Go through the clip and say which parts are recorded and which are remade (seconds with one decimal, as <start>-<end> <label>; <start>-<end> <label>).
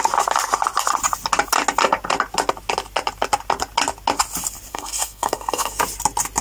0.0-4.7 recorded; 4.7-5.8 remade; 5.8-6.4 recorded